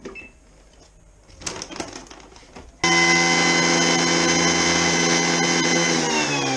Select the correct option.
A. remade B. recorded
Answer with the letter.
B